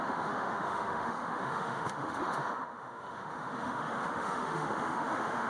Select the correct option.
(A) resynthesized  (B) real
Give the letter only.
A